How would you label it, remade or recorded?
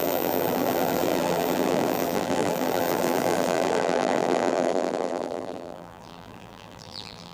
remade